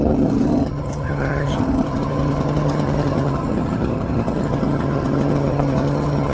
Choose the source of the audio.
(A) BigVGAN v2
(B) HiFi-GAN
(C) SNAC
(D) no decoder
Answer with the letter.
B